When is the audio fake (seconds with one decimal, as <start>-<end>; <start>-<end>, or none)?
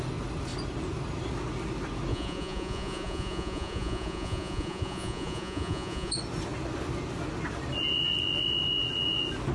2.1-6.1